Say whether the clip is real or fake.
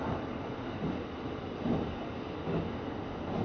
real